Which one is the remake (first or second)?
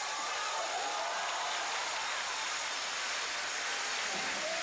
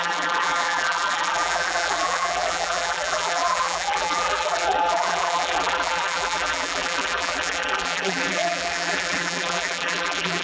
second